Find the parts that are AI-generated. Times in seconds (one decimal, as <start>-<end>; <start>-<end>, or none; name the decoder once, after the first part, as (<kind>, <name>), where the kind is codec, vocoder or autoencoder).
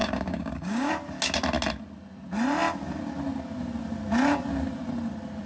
0.0-0.9 (codec, DAC)